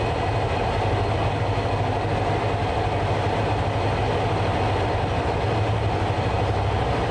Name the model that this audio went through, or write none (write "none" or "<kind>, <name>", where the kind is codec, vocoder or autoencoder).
none